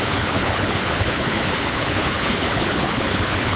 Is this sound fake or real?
fake